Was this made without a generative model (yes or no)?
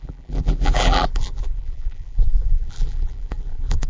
no